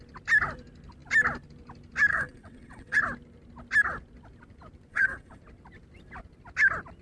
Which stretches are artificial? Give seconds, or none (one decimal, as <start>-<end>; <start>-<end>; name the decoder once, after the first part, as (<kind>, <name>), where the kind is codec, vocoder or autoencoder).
2.1-3.0 (vocoder, WaveNeXt); 4.9-5.4